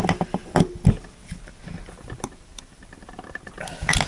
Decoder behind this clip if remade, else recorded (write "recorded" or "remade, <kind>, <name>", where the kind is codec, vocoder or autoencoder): recorded